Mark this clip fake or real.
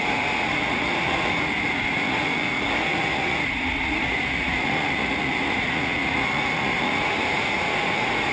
fake